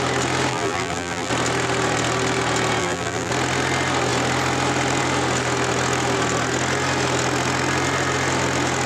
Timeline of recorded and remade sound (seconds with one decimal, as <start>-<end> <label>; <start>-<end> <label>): 0.0-0.5 recorded; 0.5-1.3 remade; 1.3-2.8 recorded; 2.8-3.3 remade; 3.3-8.9 recorded